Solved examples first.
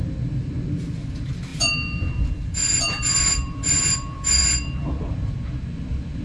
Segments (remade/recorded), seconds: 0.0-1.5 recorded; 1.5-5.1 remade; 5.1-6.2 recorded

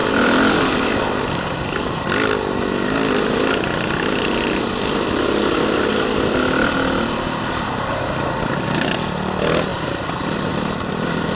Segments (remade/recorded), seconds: 0.0-0.9 remade; 0.9-9.7 recorded; 9.7-10.9 remade; 10.9-11.3 recorded

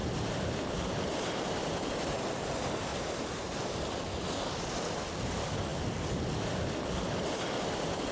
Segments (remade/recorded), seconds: 0.0-1.4 remade; 1.4-2.9 recorded; 2.9-3.6 remade; 3.6-8.1 recorded

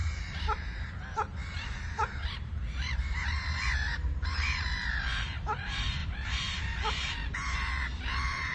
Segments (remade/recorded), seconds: 0.0-8.5 remade

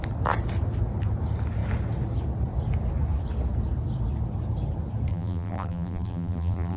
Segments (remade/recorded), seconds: 0.0-5.1 recorded; 5.1-6.8 remade

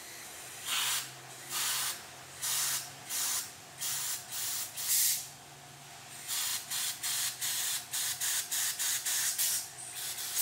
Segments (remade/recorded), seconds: 0.0-10.4 recorded